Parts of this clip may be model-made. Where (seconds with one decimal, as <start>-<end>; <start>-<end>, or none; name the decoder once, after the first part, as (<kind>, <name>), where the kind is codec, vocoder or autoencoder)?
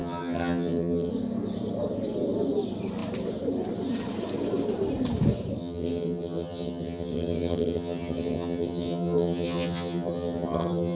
0.0-1.1 (vocoder, HiFi-GAN); 5.6-11.0